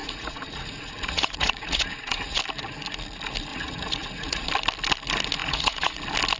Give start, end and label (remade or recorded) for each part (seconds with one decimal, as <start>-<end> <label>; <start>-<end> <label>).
0.0-2.4 remade; 2.4-3.5 recorded; 3.5-4.5 remade; 4.5-5.4 recorded; 5.4-6.0 remade; 6.0-6.4 recorded